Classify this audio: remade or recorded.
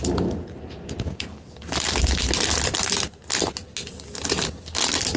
recorded